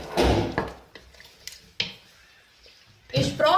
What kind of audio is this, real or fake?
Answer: real